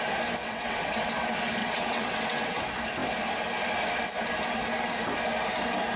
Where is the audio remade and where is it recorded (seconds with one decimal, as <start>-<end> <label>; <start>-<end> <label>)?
0.0-0.4 recorded; 0.4-1.1 remade; 1.1-1.6 recorded; 1.6-2.6 remade; 2.6-6.0 recorded